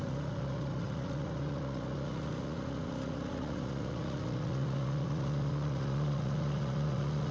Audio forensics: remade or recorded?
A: remade